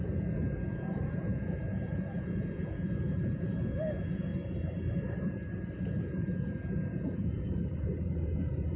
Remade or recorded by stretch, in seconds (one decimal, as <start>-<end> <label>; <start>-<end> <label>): 0.0-4.3 remade; 4.3-6.0 recorded; 6.0-8.8 remade